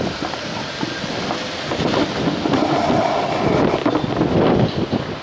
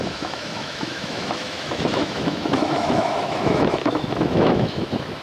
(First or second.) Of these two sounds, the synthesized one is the second